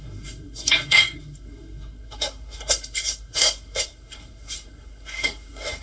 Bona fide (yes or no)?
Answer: no